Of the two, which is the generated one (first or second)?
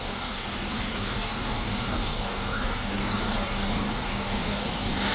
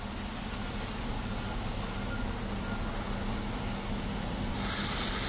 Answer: first